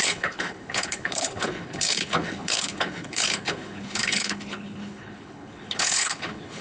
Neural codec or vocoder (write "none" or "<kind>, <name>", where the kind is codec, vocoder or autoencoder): codec, HILCodec